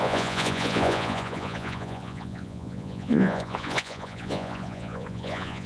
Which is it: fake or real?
fake